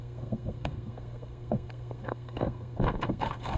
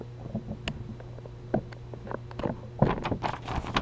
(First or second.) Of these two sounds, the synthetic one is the first